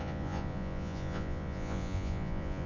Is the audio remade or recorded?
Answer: remade